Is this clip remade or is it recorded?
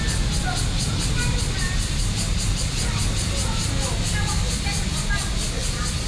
recorded